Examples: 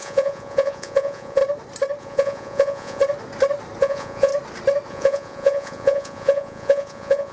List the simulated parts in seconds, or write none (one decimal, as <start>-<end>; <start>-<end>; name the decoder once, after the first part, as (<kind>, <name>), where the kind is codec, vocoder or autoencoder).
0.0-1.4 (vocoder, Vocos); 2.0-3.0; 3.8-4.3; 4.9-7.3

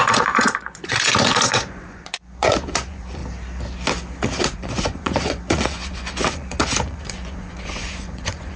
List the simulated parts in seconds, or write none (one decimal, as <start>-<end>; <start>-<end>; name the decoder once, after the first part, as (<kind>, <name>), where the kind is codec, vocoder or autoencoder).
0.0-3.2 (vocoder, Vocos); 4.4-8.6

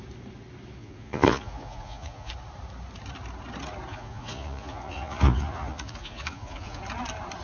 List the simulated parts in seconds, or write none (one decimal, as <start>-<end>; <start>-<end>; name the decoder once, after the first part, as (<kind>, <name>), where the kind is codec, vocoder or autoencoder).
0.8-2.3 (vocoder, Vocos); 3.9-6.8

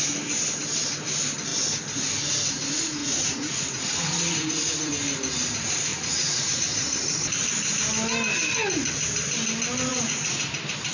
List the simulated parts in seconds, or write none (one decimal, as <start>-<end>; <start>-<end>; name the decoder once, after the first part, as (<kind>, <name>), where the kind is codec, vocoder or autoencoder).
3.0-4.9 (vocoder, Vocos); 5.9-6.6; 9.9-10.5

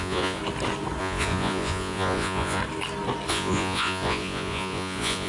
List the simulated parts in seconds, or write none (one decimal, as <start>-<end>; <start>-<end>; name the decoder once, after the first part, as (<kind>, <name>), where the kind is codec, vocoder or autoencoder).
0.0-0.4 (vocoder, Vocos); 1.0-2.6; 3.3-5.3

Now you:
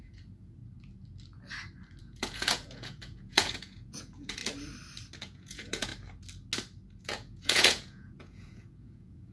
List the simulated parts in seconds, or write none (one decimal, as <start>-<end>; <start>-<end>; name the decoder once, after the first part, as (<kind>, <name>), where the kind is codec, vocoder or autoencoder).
0.0-0.6 (vocoder, Vocos); 2.0-4.4; 5.2-5.9; 7.0-9.3

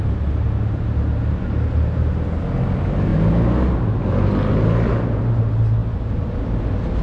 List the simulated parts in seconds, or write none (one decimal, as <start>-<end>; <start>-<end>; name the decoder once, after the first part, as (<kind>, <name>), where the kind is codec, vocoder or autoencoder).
none

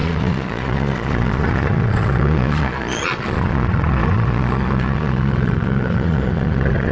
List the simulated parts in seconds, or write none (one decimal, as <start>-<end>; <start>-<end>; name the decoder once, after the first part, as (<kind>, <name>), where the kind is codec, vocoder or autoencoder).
0.0-6.9 (vocoder, Vocos)